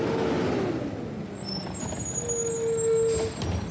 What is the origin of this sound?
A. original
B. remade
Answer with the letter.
A